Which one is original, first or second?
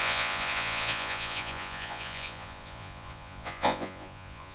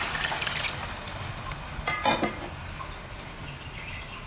second